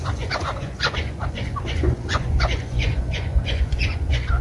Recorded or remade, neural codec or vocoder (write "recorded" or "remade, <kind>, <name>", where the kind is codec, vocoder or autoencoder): remade, vocoder, Vocos